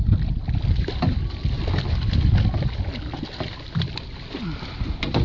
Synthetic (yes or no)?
no